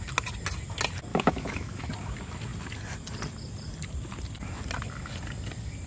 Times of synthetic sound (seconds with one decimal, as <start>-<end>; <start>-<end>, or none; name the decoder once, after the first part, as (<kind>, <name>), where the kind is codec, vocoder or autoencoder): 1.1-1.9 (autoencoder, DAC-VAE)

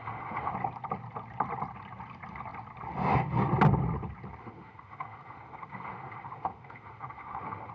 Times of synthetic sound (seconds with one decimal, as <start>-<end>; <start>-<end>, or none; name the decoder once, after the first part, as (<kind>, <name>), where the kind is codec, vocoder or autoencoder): 0.0-0.5 (autoencoder, DAC-VAE); 4.4-7.7

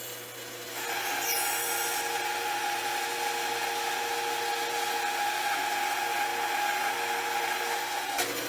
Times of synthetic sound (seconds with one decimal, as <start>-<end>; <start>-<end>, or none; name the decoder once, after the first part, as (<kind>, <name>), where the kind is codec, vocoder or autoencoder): none

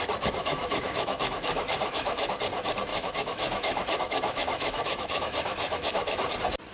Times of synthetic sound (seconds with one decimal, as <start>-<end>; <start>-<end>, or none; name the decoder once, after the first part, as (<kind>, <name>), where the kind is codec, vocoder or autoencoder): 0.4-2.3 (autoencoder, DAC-VAE); 2.9-6.3

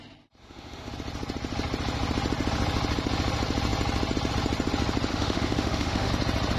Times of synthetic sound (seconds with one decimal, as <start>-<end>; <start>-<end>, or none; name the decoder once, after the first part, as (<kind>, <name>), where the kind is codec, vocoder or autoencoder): 0.4-0.9 (autoencoder, DAC-VAE); 5.1-6.1